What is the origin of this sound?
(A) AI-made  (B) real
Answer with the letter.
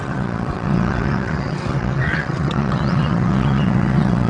A